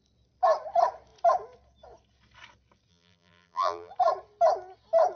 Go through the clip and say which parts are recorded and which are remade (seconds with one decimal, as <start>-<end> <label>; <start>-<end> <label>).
0.0-2.9 recorded; 2.9-3.9 remade; 3.9-5.2 recorded